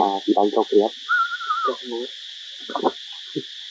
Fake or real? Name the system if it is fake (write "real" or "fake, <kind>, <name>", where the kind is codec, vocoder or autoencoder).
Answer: real